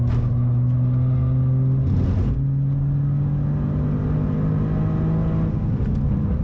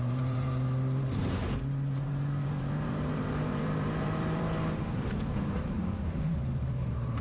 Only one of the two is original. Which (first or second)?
first